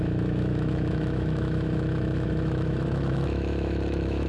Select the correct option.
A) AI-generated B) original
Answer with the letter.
A